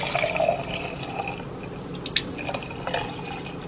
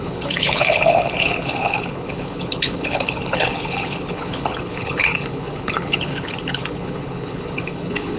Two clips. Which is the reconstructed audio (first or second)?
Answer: second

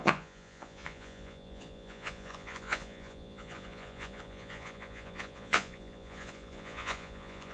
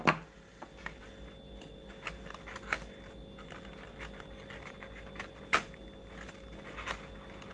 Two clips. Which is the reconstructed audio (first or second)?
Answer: first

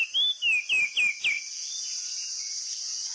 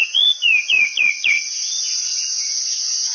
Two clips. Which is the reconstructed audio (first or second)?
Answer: second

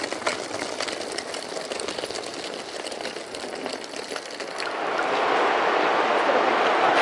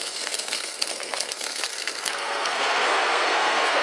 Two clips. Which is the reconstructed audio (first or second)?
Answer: second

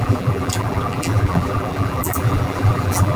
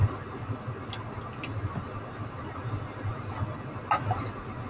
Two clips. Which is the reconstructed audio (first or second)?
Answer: first